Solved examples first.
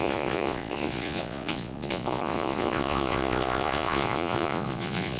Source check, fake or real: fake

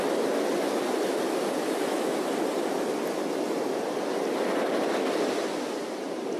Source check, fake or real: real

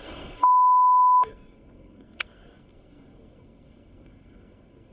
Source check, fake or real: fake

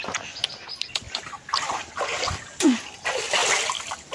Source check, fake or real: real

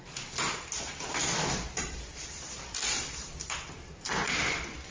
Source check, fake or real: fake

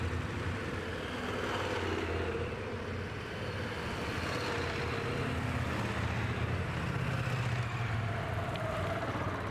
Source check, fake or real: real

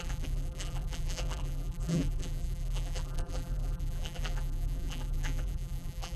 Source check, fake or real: fake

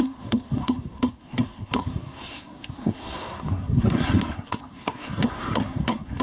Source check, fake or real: fake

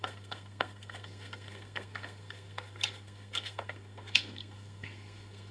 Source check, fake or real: fake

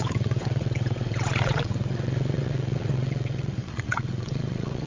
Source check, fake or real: fake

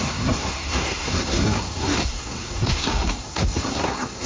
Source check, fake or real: fake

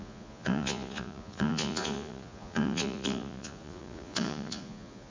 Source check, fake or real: fake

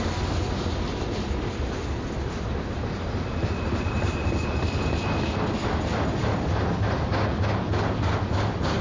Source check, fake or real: real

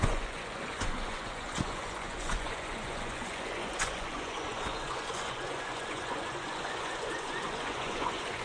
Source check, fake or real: fake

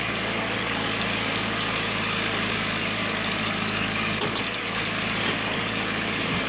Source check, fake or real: fake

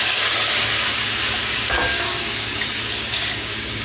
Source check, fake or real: fake